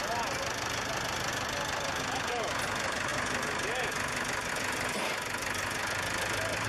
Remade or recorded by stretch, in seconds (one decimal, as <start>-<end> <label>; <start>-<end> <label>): 0.0-6.7 recorded